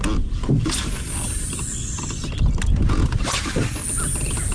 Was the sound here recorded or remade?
recorded